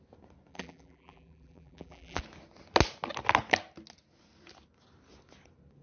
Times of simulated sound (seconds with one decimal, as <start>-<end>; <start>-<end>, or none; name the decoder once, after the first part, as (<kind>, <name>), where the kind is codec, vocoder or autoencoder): 0.5-2.2 (vocoder, BigVGAN v2)